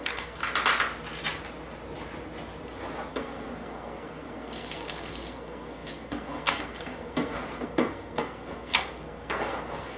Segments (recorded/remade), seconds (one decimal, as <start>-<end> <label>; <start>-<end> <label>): 0.0-0.4 remade; 0.4-3.1 recorded; 3.1-10.0 remade